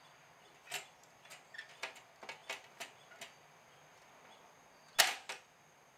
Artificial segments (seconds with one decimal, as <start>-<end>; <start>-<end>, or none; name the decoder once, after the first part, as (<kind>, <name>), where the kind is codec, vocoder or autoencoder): none